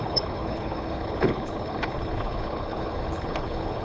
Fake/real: fake